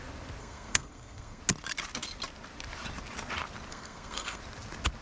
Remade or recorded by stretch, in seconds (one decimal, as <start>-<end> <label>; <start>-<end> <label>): 0.0-0.4 recorded; 0.4-1.4 remade; 1.4-3.7 recorded; 3.7-4.4 remade; 4.4-5.0 recorded